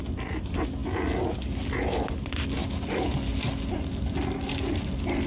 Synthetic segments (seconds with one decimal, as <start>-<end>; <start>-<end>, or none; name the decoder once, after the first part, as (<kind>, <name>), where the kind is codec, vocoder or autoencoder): none